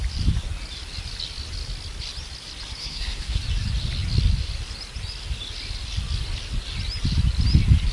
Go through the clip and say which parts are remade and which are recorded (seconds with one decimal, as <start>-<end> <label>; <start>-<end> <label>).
0.0-2.8 recorded; 2.8-3.4 remade; 3.4-7.9 recorded